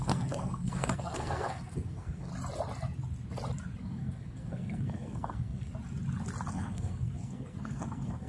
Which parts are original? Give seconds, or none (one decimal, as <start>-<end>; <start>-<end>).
2.3-3.8; 5.7-6.5